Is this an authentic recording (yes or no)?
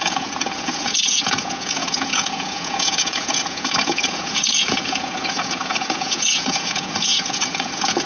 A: no